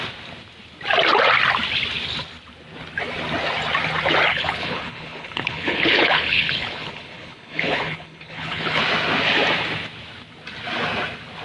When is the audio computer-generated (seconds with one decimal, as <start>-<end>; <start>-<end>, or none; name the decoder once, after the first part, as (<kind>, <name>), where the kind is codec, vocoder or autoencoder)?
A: 4.3-8.8 (codec, HILCodec)